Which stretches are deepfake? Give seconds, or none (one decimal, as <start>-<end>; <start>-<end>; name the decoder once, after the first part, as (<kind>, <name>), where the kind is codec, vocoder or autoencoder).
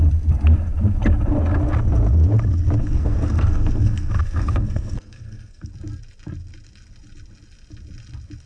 2.8-5.7 (codec, SNAC)